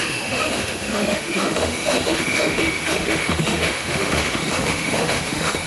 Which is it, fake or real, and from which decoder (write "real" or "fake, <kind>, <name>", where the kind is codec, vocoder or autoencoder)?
fake, autoencoder, DAC-VAE